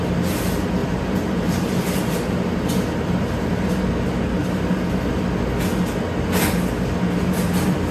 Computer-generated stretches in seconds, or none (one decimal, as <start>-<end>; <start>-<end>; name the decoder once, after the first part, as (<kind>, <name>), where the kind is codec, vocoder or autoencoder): 0.8-3.7 (vocoder, BigVGAN v2); 4.4-5.2